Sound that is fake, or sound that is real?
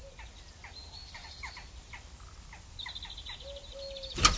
real